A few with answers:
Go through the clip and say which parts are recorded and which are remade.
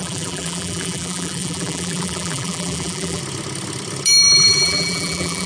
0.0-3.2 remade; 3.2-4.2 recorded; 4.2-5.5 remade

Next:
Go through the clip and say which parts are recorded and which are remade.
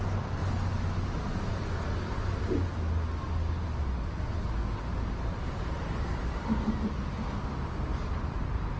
0.0-4.6 recorded; 4.6-8.8 remade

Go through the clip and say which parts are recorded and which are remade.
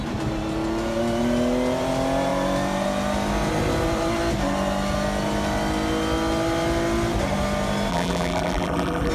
0.0-7.9 recorded; 7.9-9.1 remade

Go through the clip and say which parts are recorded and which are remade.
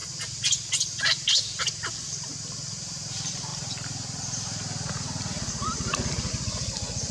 0.0-7.1 recorded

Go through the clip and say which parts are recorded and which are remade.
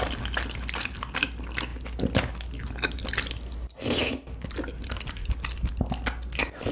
0.0-5.2 recorded; 5.2-5.8 remade; 5.8-6.7 recorded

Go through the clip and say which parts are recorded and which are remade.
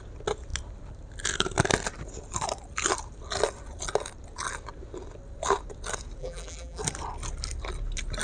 0.0-6.2 recorded; 6.2-6.8 remade; 6.8-8.2 recorded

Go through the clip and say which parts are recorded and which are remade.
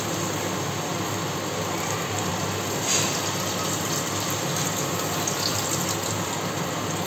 0.0-7.1 recorded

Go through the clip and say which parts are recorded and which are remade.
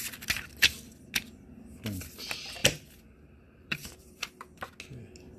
0.0-2.6 recorded; 2.6-4.3 remade; 4.3-5.4 recorded